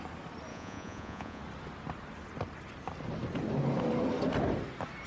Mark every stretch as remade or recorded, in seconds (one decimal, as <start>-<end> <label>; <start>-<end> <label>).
0.0-0.5 recorded; 0.5-1.4 remade; 1.4-5.1 recorded